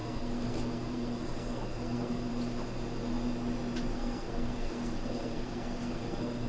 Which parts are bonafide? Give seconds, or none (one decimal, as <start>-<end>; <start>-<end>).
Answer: 2.3-3.9